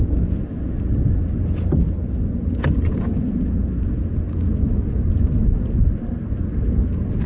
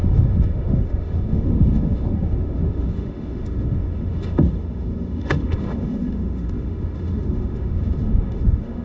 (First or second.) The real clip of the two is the first